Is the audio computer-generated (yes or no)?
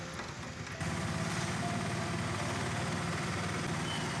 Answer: no